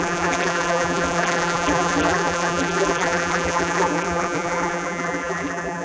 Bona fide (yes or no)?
no